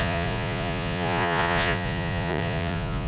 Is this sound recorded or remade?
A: remade